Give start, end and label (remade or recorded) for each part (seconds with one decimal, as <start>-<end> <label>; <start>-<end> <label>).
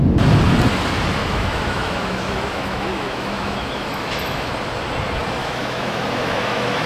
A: 0.0-1.2 recorded; 1.2-4.5 remade; 4.5-5.4 recorded; 5.4-6.9 remade